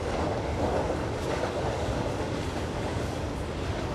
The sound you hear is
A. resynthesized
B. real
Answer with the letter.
A